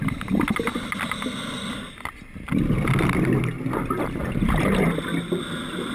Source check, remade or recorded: recorded